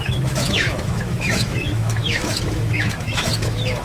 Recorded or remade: remade